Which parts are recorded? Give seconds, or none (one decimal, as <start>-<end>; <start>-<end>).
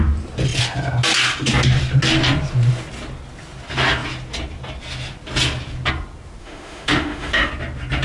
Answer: 0.0-6.4; 7.5-8.0